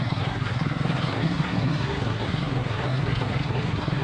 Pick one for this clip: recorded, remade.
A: remade